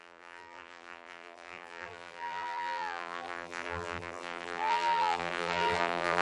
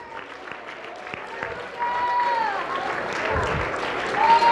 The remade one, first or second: first